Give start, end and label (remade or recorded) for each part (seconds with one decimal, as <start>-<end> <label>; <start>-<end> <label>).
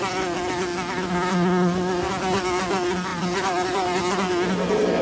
0.0-3.1 recorded; 3.1-4.0 remade; 4.0-5.0 recorded